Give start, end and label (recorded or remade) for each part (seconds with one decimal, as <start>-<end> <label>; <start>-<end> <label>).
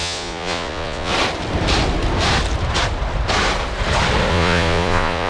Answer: 0.0-1.1 remade; 1.1-4.3 recorded; 4.3-5.3 remade